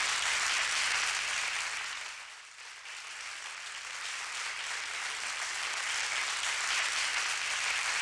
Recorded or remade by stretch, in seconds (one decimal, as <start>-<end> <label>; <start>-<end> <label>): 0.0-7.1 recorded; 7.1-8.0 remade